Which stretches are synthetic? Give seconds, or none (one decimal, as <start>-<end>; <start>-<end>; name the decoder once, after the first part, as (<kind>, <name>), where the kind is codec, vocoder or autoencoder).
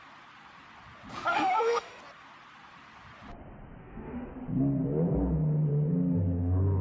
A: 1.3-2.0 (autoencoder, DAC-VAE); 3.8-4.3